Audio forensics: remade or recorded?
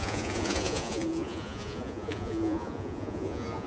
remade